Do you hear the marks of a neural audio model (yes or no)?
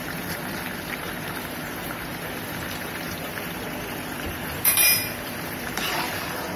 yes